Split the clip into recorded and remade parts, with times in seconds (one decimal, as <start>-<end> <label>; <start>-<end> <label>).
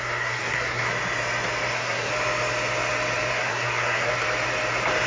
0.0-0.9 remade; 0.9-1.7 recorded; 1.7-2.1 remade; 2.1-3.3 recorded; 3.3-4.1 remade; 4.1-5.1 recorded